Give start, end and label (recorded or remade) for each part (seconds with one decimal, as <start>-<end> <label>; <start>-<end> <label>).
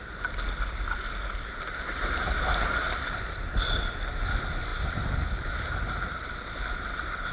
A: 0.0-7.3 recorded